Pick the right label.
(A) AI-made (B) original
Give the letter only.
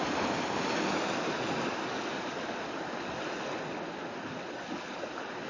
B